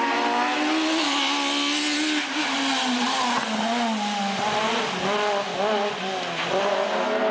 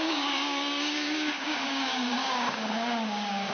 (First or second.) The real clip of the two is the first